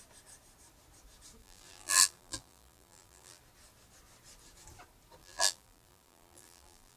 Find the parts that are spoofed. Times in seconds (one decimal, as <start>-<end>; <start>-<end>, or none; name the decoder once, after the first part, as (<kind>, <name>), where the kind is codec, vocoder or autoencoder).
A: 1.4-3.4 (vocoder, BigVGAN v2); 5.2-7.0